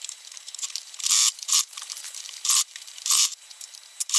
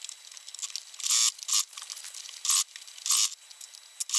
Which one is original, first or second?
second